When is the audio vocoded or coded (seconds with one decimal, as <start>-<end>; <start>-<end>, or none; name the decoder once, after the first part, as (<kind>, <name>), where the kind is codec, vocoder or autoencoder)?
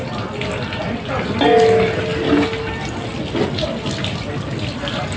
none